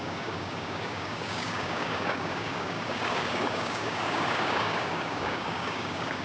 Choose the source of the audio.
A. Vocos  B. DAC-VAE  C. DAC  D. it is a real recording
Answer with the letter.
C